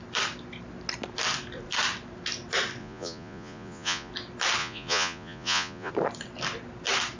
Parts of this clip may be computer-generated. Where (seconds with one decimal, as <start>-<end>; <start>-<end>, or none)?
2.8-4.1; 4.6-5.9